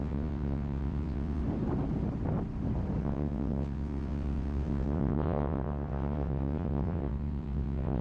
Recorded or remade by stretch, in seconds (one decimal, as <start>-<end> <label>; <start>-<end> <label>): 0.0-1.4 remade; 1.4-3.0 recorded; 3.0-8.0 remade